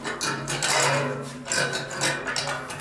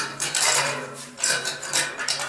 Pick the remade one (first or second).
second